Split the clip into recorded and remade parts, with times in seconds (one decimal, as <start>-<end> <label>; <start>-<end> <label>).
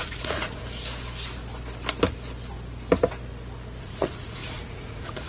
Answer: 0.0-0.6 remade; 0.6-3.8 recorded; 3.8-5.3 remade